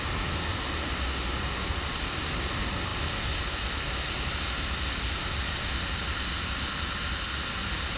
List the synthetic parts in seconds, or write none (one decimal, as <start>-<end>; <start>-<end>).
none